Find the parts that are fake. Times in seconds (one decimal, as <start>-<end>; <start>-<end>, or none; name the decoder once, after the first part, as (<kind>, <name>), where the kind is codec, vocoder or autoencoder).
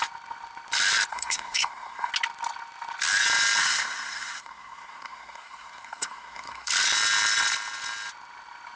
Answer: 1.1-2.1 (codec, SNAC); 3.6-6.7